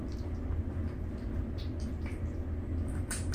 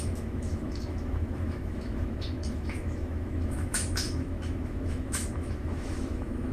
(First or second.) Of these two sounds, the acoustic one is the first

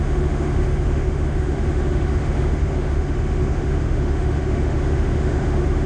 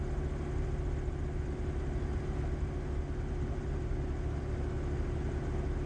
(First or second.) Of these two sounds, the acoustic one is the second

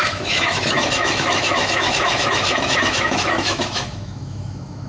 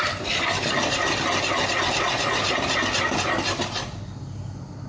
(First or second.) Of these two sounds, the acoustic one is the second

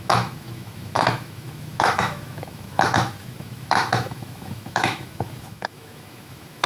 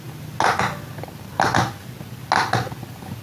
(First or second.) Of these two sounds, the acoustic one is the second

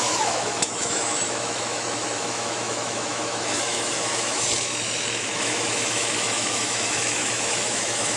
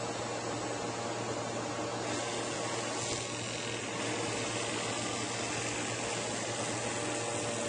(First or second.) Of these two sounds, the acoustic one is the second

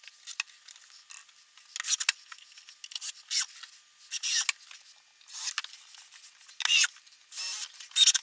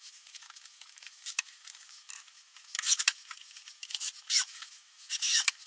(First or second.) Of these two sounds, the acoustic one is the first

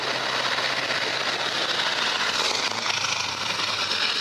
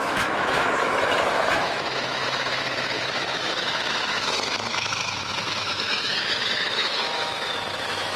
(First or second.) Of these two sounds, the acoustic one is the first